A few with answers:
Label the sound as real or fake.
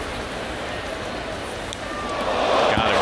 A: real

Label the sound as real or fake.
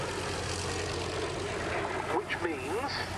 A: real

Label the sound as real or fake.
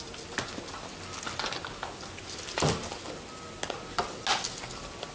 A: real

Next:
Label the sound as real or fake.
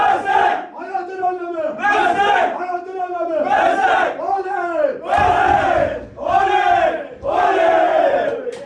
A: fake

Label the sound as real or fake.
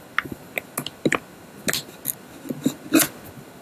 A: real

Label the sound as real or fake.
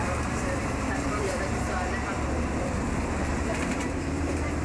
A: fake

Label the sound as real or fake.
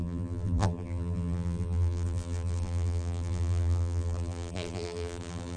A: fake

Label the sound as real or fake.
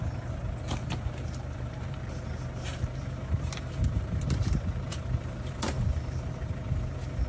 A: fake